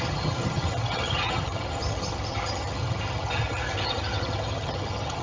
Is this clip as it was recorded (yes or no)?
no